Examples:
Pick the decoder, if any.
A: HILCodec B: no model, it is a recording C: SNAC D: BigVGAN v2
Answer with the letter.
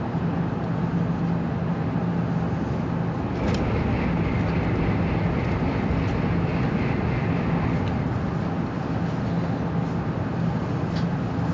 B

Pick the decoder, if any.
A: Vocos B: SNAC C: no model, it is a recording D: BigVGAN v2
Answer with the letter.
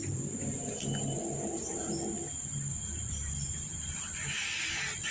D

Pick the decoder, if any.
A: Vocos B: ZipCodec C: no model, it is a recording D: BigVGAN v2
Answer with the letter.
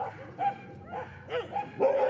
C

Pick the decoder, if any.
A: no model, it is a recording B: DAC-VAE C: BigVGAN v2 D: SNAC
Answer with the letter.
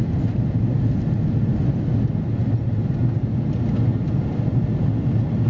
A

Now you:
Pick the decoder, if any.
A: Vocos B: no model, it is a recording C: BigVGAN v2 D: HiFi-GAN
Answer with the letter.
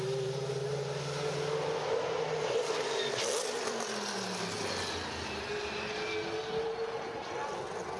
B